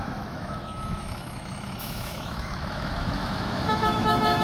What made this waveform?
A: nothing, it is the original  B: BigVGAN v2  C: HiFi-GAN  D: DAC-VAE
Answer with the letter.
D